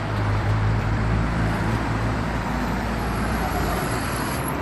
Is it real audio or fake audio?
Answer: fake